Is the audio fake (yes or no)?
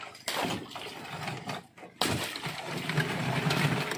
no